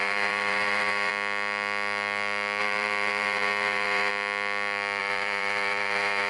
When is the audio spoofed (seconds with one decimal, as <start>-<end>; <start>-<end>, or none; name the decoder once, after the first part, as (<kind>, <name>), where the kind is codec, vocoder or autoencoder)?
0.0-1.1 (vocoder, BigVGAN v2); 2.6-4.1; 5.0-6.3